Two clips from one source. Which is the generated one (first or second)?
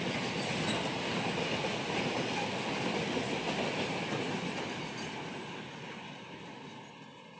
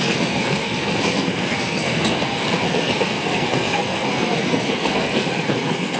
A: second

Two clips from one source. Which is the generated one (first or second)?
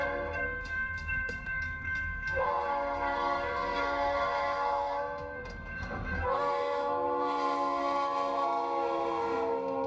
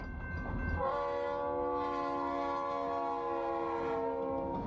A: first